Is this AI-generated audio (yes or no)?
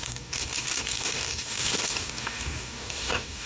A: yes